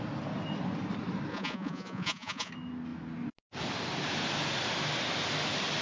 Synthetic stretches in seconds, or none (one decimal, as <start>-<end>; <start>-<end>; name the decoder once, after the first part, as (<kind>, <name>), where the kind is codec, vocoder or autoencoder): 1.3-2.5 (vocoder, Vocos)